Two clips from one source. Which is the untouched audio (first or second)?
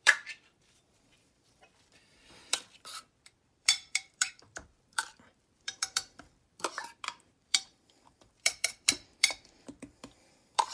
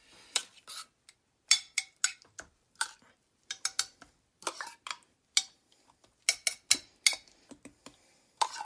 second